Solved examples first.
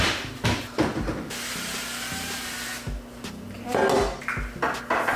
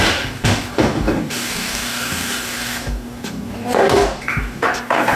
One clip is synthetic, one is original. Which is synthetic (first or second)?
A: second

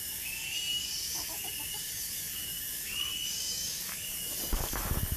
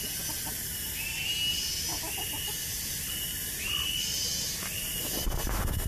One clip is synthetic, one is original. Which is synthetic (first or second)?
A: first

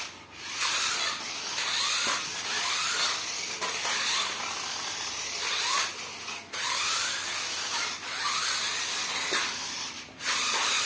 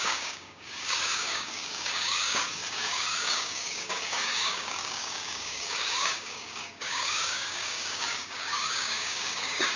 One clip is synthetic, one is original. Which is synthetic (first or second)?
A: second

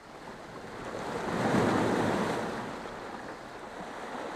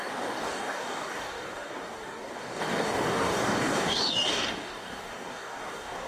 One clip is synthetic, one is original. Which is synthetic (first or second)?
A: second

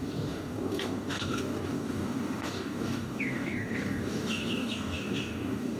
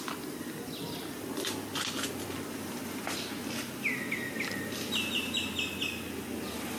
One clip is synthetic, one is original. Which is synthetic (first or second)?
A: first